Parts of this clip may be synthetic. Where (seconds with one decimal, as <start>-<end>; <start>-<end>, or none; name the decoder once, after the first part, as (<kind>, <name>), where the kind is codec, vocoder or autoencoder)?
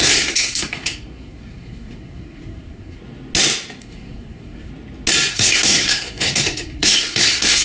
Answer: 0.0-3.0 (codec, SNAC); 3.8-4.7; 5.3-7.6